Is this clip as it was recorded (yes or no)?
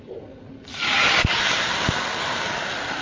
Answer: yes